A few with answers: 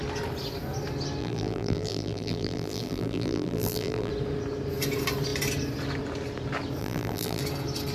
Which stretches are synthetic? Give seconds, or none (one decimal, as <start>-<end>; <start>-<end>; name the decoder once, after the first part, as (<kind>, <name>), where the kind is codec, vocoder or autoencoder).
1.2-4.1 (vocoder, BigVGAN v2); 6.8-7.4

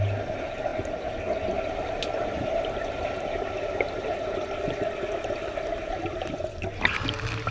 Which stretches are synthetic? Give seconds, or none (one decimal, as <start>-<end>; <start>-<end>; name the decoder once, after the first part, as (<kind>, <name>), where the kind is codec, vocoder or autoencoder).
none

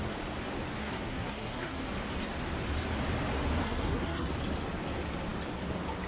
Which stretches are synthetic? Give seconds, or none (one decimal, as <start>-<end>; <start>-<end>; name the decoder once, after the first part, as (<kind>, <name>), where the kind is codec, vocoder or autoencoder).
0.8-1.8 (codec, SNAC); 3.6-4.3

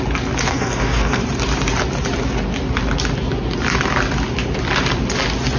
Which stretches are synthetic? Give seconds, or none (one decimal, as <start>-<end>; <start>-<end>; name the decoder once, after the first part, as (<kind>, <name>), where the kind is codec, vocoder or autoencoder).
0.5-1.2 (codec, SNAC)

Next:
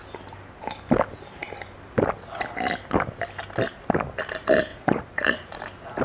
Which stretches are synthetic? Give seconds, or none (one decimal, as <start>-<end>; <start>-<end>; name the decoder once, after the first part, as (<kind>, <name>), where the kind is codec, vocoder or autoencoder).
4.7-5.6 (vocoder, Vocos)

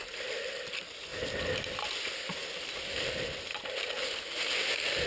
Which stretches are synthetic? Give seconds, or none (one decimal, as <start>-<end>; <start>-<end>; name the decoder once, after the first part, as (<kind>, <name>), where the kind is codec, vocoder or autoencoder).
none